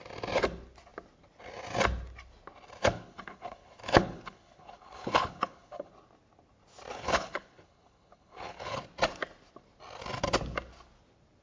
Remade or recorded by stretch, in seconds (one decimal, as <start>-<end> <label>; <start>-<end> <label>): 0.0-2.8 recorded; 2.8-5.9 remade; 5.9-6.9 recorded; 6.9-8.8 remade; 8.8-11.4 recorded